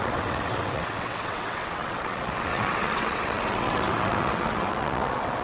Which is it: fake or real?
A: fake